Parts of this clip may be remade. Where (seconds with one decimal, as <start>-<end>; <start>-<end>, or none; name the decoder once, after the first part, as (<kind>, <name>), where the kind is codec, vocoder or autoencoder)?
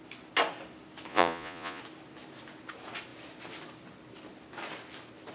1.1-1.8 (vocoder, Vocos)